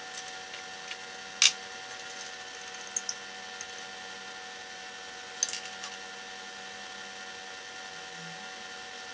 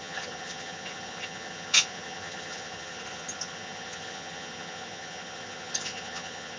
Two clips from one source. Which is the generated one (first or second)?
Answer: second